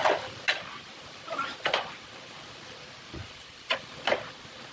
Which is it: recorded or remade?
recorded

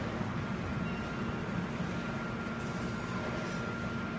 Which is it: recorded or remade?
recorded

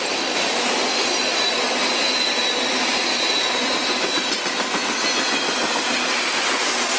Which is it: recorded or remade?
recorded